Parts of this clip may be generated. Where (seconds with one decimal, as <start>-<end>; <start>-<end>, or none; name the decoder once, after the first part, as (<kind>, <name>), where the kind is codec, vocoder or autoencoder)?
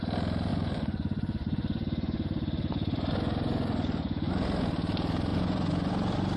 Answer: 0.5-4.3 (vocoder, Vocos); 5.3-5.9